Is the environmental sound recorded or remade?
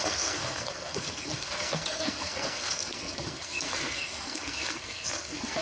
remade